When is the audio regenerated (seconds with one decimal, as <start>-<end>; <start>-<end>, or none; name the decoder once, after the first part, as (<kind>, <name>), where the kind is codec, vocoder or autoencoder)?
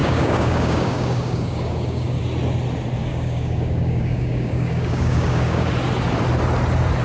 0.0-2.2 (codec, DAC); 3.0-5.7